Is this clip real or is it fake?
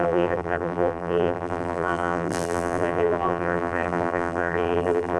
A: fake